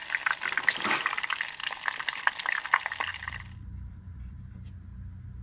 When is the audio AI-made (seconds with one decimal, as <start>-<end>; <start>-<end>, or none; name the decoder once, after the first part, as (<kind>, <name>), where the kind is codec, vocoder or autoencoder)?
0.0-1.2 (vocoder, BigVGAN v2); 3.1-4.4